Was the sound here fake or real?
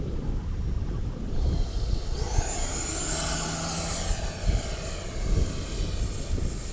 real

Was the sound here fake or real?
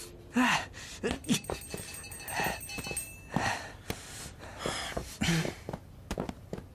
real